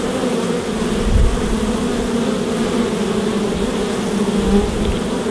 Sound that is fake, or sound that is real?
real